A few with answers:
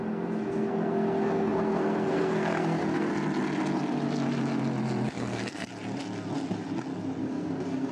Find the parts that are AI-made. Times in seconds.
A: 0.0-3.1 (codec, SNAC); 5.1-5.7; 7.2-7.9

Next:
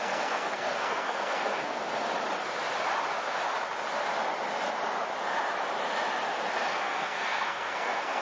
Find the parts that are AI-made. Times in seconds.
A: 0.0-1.8 (codec, SNAC); 6.7-8.2

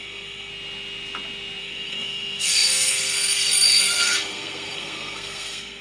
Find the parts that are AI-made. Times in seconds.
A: 0.0-0.5 (codec, SNAC); 1.6-5.8

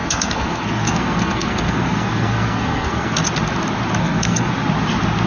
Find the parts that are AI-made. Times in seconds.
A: 0.0-3.2 (codec, SNAC); 4.0-4.5

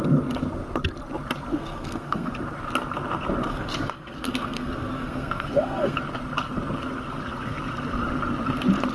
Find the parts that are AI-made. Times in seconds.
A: 1.5-2.3 (codec, SNAC); 3.5-6.0

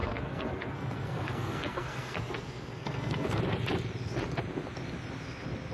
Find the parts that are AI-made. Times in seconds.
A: 0.0-3.4 (codec, SNAC)